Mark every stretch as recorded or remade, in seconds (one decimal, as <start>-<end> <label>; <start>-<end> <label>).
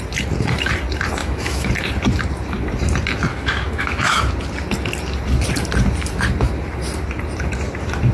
0.0-1.2 recorded; 1.2-1.7 remade; 1.7-3.3 recorded; 3.3-4.3 remade; 4.3-8.1 recorded